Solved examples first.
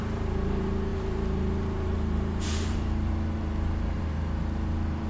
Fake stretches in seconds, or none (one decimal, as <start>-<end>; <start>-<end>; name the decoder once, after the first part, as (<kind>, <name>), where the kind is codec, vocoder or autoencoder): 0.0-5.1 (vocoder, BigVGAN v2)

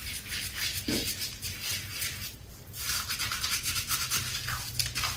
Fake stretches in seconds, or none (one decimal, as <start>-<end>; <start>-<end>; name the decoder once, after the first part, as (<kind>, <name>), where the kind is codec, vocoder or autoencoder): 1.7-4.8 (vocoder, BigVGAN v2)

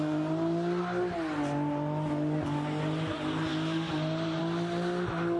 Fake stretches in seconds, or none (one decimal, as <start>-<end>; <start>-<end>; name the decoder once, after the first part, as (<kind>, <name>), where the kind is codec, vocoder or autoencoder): none

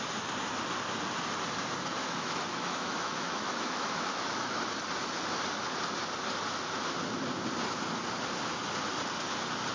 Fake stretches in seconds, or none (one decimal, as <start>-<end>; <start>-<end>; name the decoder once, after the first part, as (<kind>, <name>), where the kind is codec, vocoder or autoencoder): 2.0-4.6 (autoencoder, DAC-VAE)